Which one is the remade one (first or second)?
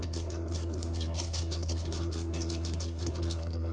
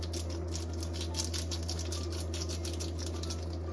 first